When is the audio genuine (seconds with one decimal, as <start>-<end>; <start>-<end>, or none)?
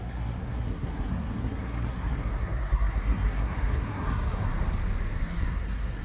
4.5-5.2